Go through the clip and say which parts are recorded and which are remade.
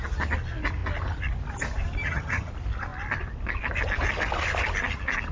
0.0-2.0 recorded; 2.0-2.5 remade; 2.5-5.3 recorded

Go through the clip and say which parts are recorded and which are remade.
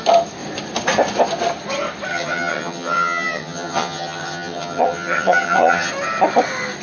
0.0-2.1 recorded; 2.1-5.9 remade; 5.9-6.8 recorded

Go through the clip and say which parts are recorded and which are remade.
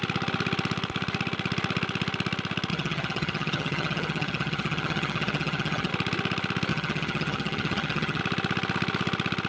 0.0-2.7 recorded; 2.7-5.9 remade; 5.9-6.7 recorded; 6.7-8.2 remade; 8.2-9.5 recorded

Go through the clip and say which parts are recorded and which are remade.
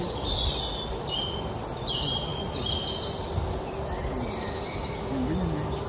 0.0-5.9 recorded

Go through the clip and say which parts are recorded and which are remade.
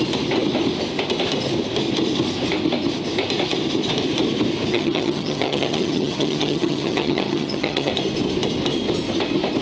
0.0-4.7 recorded; 4.7-7.9 remade; 7.9-9.6 recorded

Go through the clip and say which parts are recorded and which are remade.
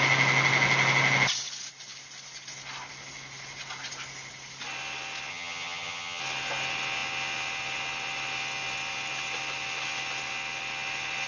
0.0-5.3 recorded; 5.3-6.2 remade; 6.2-11.3 recorded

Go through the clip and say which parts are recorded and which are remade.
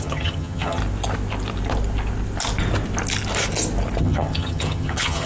0.0-0.8 remade; 0.8-4.0 recorded; 4.0-5.3 remade